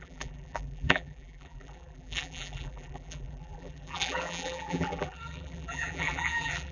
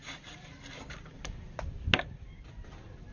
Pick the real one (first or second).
second